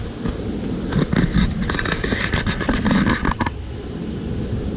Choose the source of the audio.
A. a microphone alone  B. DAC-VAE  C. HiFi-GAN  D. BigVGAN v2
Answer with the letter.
A